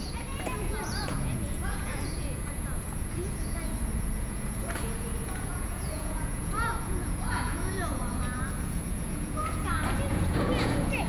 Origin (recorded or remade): remade